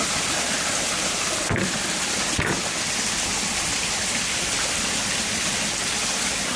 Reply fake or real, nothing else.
real